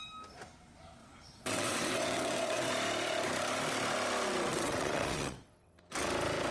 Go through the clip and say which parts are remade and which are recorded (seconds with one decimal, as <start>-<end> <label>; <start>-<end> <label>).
0.0-1.0 recorded; 1.0-2.7 remade; 2.7-4.5 recorded; 4.5-5.8 remade; 5.8-6.5 recorded

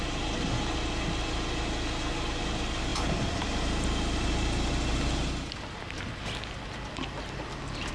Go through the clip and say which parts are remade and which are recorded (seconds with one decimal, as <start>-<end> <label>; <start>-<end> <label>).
0.0-7.9 recorded

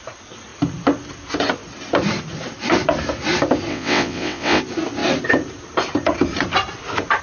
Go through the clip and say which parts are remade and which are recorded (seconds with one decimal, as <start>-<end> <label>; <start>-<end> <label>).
0.0-3.7 recorded; 3.7-4.6 remade; 4.6-7.2 recorded